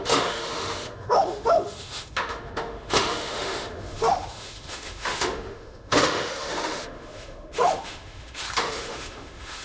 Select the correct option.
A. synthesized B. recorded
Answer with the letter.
A